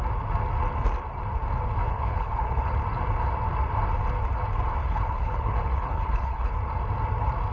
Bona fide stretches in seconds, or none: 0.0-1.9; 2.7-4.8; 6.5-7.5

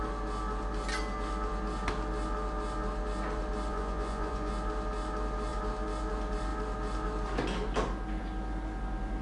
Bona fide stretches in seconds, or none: 0.0-3.7; 4.5-9.2

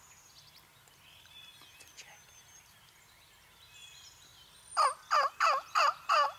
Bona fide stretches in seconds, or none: 0.0-6.4

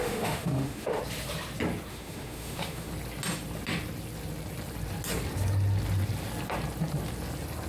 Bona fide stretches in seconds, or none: 1.0-1.9; 2.9-7.7

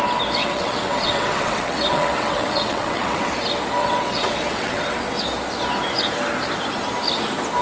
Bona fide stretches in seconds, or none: 0.0-0.4; 3.3-3.8; 5.0-7.6

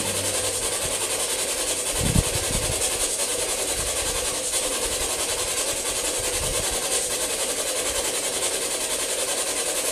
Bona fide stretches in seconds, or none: 0.0-3.3; 5.0-6.5; 7.5-9.9

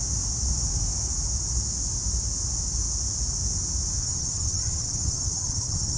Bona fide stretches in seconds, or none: 0.0-4.0